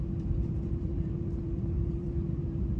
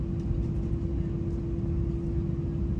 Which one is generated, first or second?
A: first